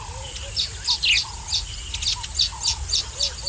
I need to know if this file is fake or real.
real